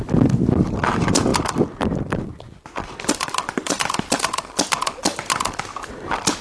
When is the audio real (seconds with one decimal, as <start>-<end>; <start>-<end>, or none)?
0.0-6.4